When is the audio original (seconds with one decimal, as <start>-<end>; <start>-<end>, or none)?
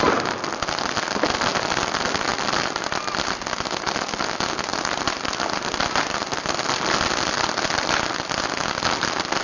0.0-9.4